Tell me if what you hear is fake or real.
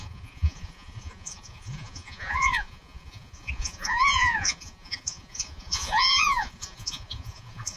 fake